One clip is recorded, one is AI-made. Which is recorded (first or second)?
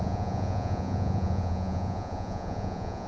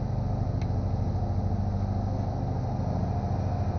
second